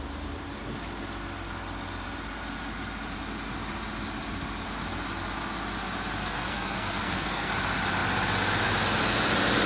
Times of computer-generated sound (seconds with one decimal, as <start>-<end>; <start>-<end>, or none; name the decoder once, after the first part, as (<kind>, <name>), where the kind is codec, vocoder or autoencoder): 6.2-7.5 (codec, SNAC)